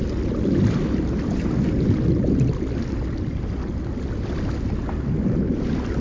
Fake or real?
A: real